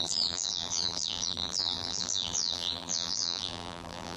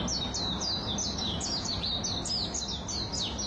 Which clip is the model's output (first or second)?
first